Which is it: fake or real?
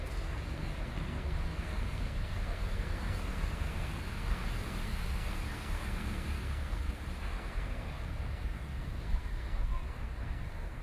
fake